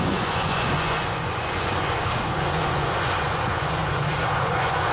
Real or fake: fake